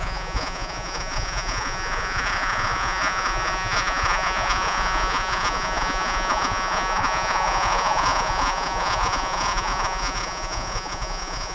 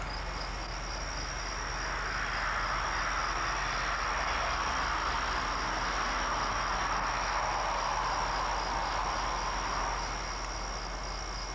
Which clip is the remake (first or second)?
first